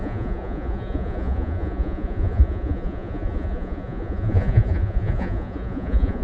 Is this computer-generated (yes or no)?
yes